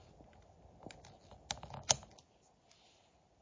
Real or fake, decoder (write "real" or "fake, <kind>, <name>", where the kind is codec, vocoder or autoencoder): real